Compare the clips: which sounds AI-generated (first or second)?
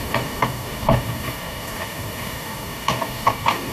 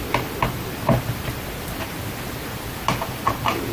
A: first